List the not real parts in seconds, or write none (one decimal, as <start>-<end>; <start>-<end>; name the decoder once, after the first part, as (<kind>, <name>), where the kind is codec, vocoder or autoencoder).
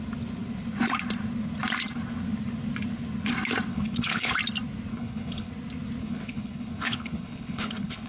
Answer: 3.7-4.3 (codec, HILCodec); 4.9-5.5; 6.0-8.1